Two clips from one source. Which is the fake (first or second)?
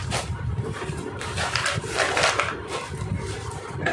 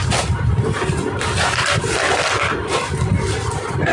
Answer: first